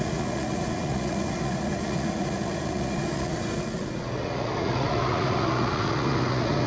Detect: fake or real fake